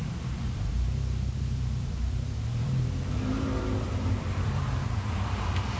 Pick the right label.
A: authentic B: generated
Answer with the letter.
B